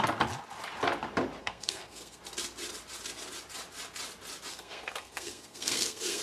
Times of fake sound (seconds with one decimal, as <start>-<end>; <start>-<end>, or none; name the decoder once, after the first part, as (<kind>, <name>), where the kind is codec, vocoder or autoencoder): 1.4-2.2 (codec, SNAC); 4.5-6.2